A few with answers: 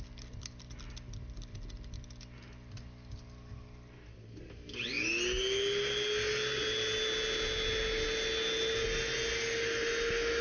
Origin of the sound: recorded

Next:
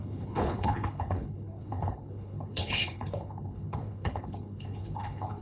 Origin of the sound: remade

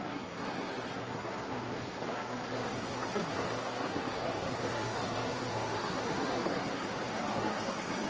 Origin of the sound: remade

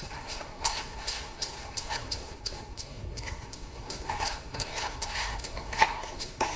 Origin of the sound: remade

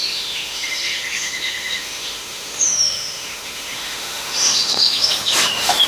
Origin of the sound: remade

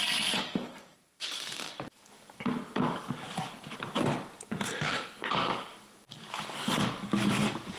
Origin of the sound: remade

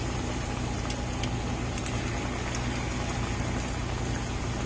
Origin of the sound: recorded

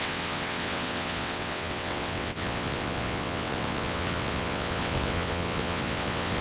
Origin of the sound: remade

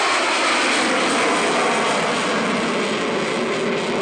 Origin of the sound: recorded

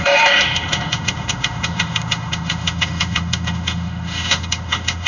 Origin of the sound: remade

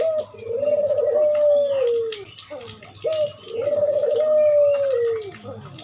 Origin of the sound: recorded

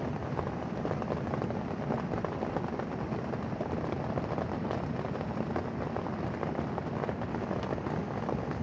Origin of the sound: recorded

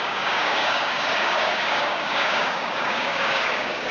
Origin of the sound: remade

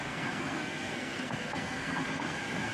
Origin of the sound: remade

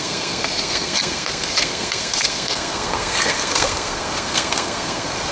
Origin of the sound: remade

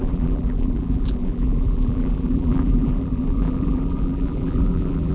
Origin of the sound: remade